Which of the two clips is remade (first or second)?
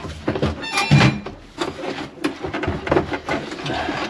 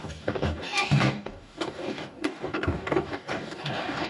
second